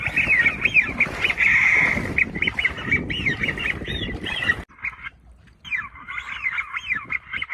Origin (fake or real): real